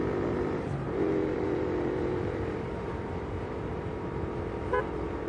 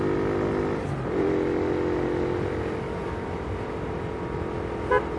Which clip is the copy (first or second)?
first